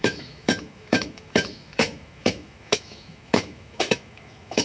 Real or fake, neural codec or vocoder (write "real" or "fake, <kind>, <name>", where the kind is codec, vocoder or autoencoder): fake, autoencoder, DAC-VAE